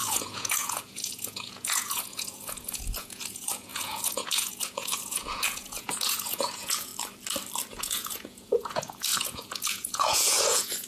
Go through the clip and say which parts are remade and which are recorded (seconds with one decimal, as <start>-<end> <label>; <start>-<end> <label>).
0.0-6.9 remade; 6.9-7.7 recorded; 7.7-10.9 remade